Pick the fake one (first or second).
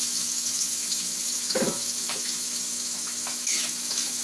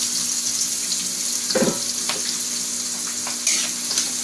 first